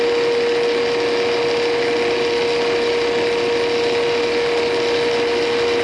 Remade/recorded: recorded